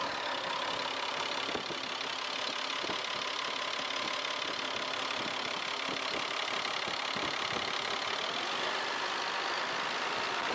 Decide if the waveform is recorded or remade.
recorded